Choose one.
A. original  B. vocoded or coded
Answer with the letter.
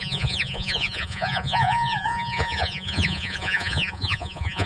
B